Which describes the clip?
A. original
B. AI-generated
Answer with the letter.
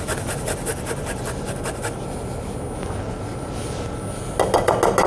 A